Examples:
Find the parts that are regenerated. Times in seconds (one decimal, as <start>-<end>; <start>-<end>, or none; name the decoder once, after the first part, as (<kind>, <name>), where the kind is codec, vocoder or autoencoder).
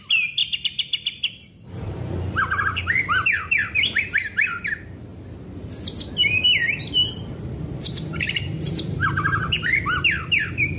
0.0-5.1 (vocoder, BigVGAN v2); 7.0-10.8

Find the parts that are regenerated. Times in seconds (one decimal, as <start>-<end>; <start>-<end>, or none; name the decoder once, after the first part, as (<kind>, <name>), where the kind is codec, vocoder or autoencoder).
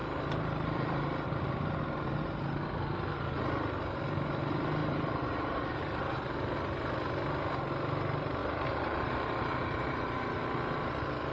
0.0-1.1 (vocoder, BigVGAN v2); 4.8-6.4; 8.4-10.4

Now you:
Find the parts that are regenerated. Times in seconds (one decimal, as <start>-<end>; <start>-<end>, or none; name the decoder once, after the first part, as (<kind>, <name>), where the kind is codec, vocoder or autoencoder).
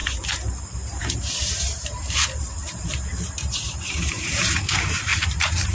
1.0-5.7 (vocoder, BigVGAN v2)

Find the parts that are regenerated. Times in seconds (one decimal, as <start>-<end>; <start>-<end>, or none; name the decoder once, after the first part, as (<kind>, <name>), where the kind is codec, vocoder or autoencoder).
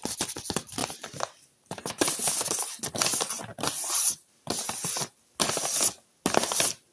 0.8-1.9 (vocoder, BigVGAN v2); 3.5-4.1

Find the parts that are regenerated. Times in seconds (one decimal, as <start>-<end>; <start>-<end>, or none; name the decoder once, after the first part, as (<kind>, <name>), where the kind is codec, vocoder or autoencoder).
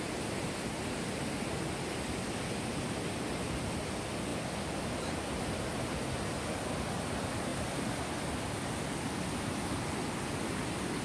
7.5-8.5 (vocoder, BigVGAN v2)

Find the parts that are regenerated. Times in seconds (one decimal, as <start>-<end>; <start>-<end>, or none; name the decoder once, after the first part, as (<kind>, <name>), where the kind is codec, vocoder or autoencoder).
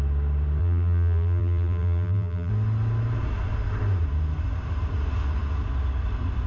0.6-2.5 (vocoder, BigVGAN v2)